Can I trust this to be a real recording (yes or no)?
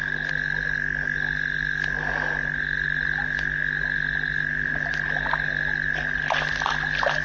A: yes